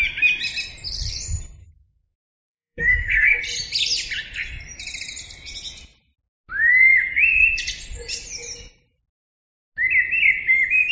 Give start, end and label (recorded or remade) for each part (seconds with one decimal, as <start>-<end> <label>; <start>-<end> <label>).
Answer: 0.0-1.6 recorded; 1.6-3.4 remade; 3.4-10.9 recorded